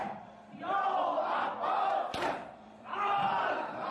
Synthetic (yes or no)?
yes